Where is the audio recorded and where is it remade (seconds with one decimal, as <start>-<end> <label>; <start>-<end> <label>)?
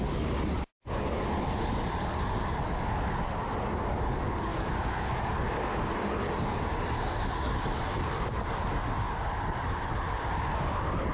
0.0-4.5 recorded; 4.5-5.1 remade; 5.1-11.1 recorded